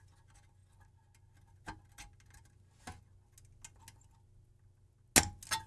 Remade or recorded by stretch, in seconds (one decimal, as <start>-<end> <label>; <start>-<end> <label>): 0.0-5.7 recorded